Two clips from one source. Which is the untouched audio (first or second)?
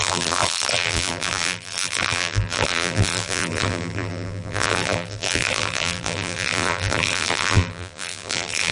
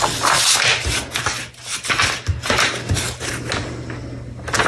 second